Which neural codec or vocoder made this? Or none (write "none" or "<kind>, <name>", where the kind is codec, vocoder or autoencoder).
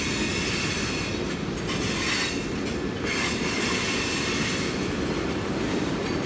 none